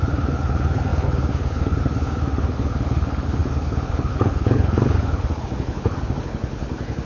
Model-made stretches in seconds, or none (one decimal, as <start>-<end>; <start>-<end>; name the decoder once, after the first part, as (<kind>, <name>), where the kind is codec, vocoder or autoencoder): 0.0-7.1 (codec, HILCodec)